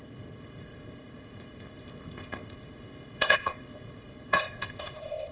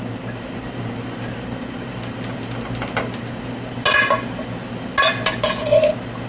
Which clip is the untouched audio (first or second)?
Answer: second